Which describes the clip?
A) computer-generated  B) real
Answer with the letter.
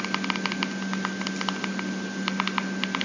B